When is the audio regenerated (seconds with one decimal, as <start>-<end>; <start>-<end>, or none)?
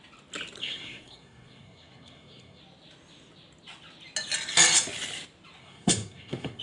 0.6-2.6; 5.6-6.6